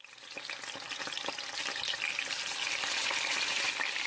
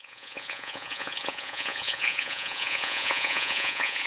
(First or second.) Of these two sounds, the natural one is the first